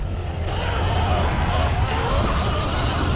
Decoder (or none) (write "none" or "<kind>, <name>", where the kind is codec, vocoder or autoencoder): none